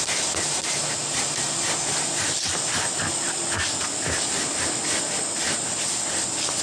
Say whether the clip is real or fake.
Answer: real